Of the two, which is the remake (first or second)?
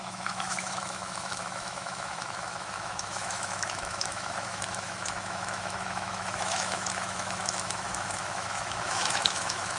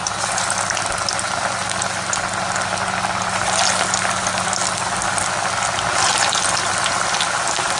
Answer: first